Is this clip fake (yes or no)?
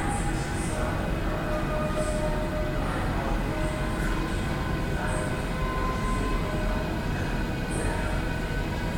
no